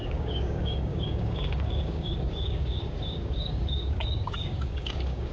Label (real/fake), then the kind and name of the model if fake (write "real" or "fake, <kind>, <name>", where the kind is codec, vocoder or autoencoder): fake, codec, DAC